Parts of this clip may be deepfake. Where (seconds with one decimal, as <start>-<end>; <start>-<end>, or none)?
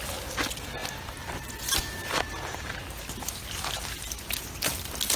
none